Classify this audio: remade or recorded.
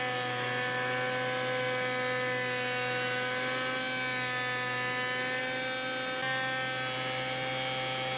recorded